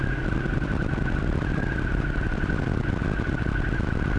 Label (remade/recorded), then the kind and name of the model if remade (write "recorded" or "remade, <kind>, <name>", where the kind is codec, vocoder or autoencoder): recorded